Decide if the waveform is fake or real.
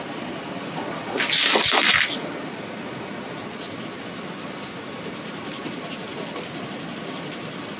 real